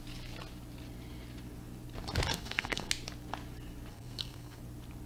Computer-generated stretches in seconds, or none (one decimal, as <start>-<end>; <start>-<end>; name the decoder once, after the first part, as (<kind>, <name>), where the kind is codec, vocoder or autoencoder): 2.3-2.9 (codec, SNAC); 3.9-4.6